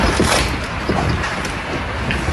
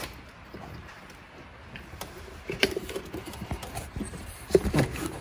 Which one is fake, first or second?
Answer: second